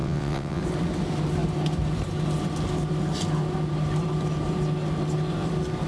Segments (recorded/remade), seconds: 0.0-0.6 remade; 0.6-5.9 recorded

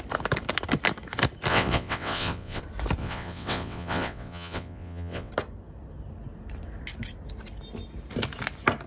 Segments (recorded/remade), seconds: 0.0-1.5 recorded; 1.5-2.6 remade; 2.6-3.0 recorded; 3.0-5.3 remade; 5.3-8.9 recorded

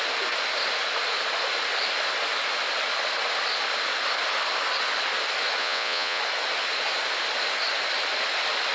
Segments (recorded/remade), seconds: 0.0-5.6 recorded; 5.6-6.2 remade; 6.2-8.7 recorded

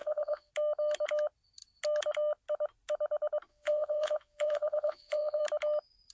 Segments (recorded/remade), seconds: 0.0-0.5 remade; 0.5-3.5 recorded; 3.5-5.4 remade; 5.4-6.1 recorded

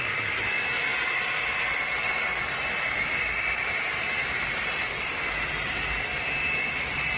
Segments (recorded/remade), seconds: 0.0-7.2 recorded

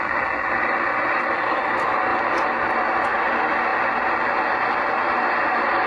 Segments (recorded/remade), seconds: 0.0-5.9 recorded